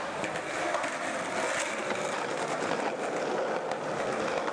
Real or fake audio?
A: real